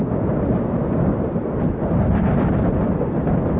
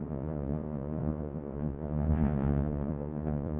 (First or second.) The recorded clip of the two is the first